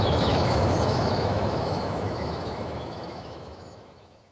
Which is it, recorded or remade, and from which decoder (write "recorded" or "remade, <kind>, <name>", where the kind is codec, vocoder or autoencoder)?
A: remade, autoencoder, DAC-VAE